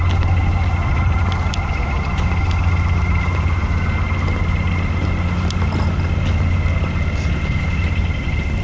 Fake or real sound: real